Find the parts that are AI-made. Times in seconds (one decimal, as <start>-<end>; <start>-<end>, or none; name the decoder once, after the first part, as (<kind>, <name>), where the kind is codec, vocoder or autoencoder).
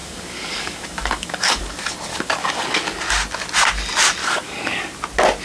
0.0-1.6 (codec, DAC); 2.1-3.0; 4.2-4.9